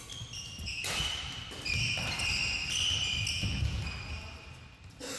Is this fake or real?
real